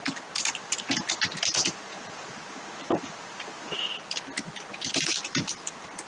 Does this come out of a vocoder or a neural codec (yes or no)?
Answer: no